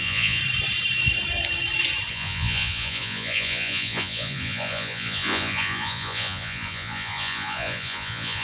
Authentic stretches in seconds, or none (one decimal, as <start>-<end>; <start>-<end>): 0.4-2.1